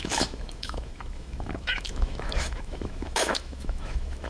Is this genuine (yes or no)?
no